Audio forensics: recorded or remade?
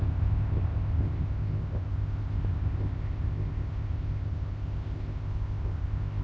remade